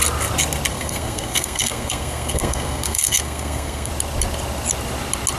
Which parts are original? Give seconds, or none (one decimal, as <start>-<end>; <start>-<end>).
0.0-0.7; 3.9-5.4